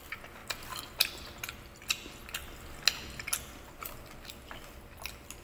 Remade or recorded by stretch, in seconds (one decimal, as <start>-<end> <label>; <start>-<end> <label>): 0.0-5.4 recorded